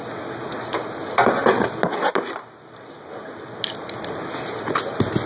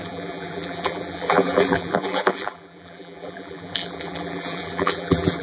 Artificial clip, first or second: second